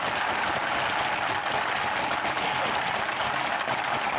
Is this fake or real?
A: real